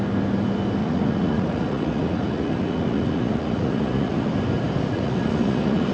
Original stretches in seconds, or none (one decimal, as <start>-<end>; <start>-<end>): 0.0-0.8; 4.3-4.9